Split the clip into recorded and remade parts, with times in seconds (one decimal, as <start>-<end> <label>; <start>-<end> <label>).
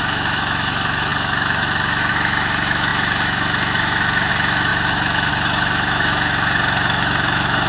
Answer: 0.0-7.7 remade